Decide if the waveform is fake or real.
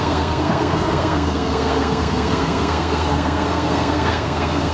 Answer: fake